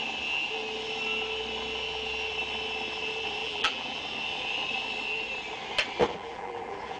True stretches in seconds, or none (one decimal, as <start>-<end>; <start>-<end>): 0.0-3.4; 4.0-6.1